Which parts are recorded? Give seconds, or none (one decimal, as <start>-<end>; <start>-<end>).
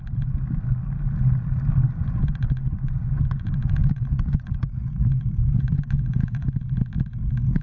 0.0-2.0; 6.5-7.6